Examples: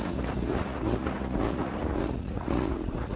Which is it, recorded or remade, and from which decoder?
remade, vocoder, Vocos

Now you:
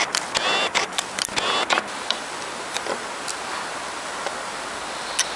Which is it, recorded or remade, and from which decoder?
recorded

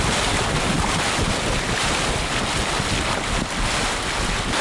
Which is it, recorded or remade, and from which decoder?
recorded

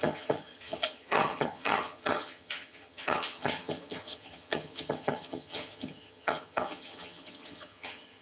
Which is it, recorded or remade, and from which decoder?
remade, vocoder, HiFi-GAN